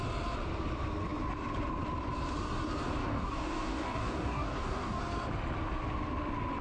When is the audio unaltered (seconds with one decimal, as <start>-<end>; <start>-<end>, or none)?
0.0-3.0; 5.0-6.6